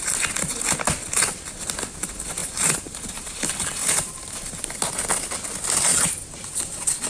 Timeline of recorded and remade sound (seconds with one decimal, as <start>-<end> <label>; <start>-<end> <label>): 0.0-2.4 recorded; 2.4-4.3 remade; 4.3-5.9 recorded; 5.9-7.1 remade